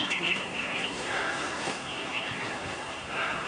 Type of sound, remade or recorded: remade